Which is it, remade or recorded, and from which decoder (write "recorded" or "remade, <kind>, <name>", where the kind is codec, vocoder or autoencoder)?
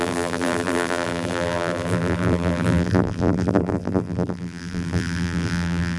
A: remade, vocoder, BigVGAN v2